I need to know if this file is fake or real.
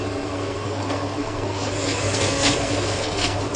fake